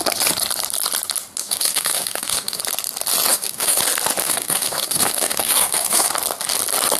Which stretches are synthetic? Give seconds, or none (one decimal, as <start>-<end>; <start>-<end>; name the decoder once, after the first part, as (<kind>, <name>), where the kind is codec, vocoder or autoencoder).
1.4-2.6 (codec, DAC); 3.3-3.8; 4.2-6.1